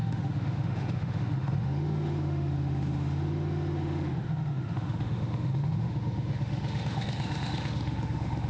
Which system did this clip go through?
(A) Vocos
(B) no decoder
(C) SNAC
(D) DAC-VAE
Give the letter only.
D